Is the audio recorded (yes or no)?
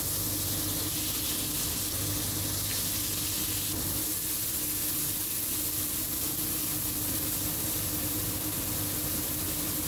yes